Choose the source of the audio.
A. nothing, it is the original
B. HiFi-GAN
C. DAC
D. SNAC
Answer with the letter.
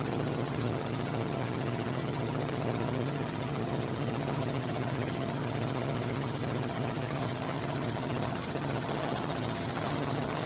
B